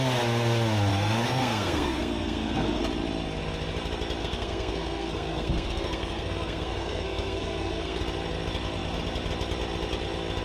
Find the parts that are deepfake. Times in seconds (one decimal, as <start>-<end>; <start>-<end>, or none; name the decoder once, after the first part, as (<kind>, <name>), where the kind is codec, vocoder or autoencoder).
0.9-2.8 (codec, SNAC); 4.2-8.0